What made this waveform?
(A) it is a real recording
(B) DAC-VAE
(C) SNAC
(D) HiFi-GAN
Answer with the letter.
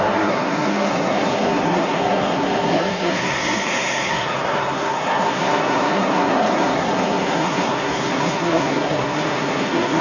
C